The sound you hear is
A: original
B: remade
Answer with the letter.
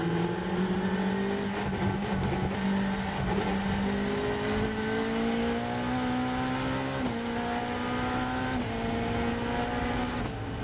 A